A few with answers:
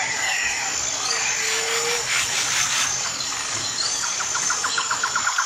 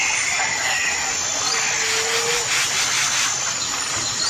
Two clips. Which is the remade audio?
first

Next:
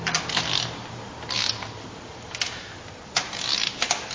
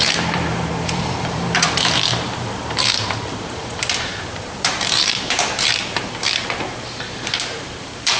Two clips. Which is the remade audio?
second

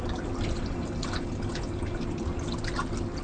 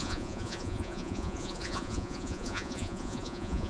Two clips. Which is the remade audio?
second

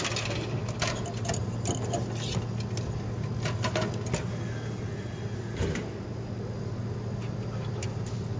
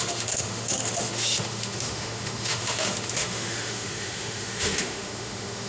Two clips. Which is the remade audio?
second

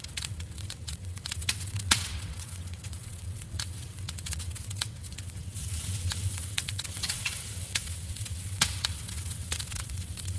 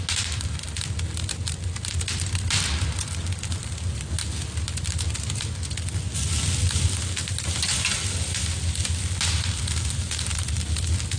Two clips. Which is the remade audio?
first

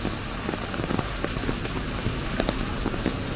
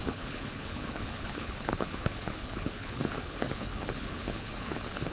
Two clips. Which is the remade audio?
second